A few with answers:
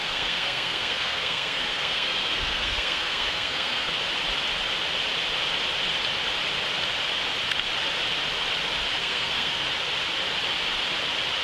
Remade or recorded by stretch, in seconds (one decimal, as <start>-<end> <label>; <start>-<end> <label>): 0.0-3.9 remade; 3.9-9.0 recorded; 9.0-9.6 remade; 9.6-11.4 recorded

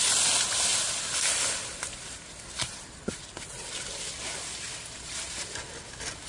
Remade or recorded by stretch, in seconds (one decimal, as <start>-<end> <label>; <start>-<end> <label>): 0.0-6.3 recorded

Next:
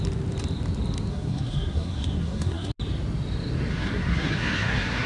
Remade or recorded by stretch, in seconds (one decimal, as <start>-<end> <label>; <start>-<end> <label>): 0.0-1.1 recorded; 1.1-2.7 remade; 2.7-3.7 recorded; 3.7-5.1 remade

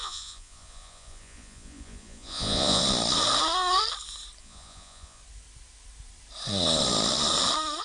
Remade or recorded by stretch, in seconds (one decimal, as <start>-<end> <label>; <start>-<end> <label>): 0.0-2.8 remade; 2.8-4.4 recorded; 4.4-5.2 remade; 5.2-7.8 recorded

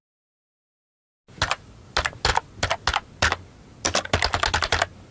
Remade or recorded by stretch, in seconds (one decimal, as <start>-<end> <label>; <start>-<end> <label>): 0.0-5.1 recorded

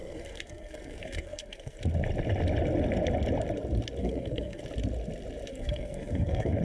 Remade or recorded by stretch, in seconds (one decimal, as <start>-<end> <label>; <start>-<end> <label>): 0.0-1.8 remade; 1.8-4.0 recorded; 4.0-4.6 remade; 4.6-5.5 recorded; 5.5-6.6 remade